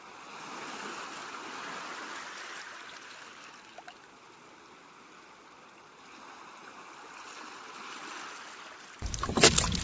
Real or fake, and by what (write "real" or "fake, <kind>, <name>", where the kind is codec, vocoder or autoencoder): real